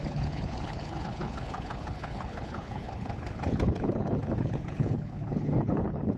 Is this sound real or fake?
fake